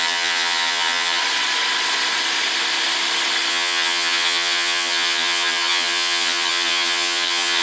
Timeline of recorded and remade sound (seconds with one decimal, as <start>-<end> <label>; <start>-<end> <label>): 0.0-1.2 remade; 1.2-3.5 recorded; 3.5-7.6 remade